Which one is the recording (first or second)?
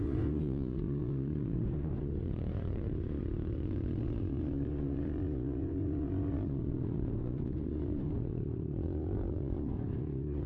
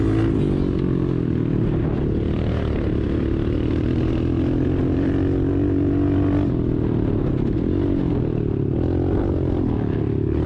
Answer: second